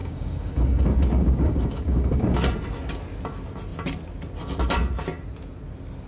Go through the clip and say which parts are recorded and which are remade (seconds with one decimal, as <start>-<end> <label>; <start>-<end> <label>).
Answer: 0.0-2.4 remade; 2.4-6.1 recorded